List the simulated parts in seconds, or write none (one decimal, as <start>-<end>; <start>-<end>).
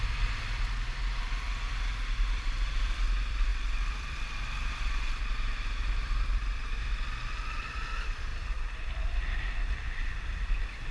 0.0-10.9